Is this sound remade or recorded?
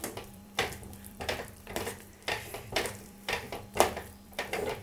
remade